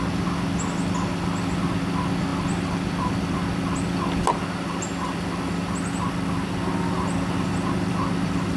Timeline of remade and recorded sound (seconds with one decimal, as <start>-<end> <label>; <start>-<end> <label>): 0.0-8.6 recorded